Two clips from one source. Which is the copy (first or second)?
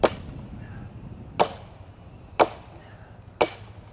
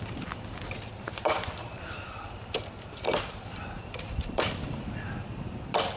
second